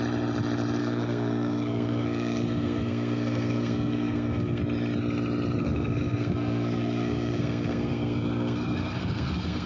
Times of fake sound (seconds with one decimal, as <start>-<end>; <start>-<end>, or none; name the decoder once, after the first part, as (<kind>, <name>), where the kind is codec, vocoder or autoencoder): 0.8-4.6 (codec, SNAC); 5.6-9.7